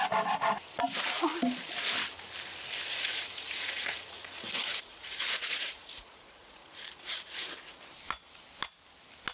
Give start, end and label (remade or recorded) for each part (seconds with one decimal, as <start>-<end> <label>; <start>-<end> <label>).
0.0-2.9 recorded; 2.9-7.8 remade; 7.8-9.3 recorded

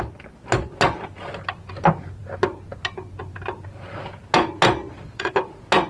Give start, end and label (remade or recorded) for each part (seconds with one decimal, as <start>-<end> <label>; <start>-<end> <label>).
0.0-4.8 recorded; 4.8-5.3 remade; 5.3-5.9 recorded

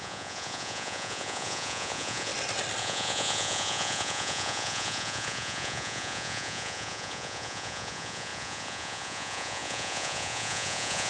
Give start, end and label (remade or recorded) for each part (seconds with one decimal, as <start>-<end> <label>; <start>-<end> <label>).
0.0-2.3 remade; 2.3-2.8 recorded; 2.8-11.1 remade

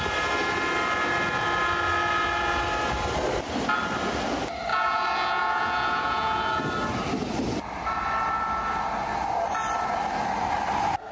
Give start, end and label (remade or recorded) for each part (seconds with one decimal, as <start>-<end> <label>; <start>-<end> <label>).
0.0-4.7 recorded; 4.7-6.6 remade; 6.6-11.1 recorded

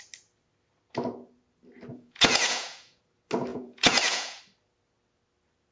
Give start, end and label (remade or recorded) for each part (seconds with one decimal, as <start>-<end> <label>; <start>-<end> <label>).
0.0-1.9 recorded; 1.9-3.0 remade; 3.0-3.5 recorded; 3.5-4.4 remade; 4.4-5.7 recorded